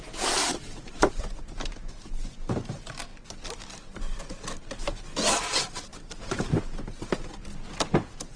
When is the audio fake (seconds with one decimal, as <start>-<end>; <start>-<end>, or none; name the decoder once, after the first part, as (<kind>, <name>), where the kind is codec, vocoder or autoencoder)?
0.5-1.4 (vocoder, BigVGAN v2); 5.9-6.6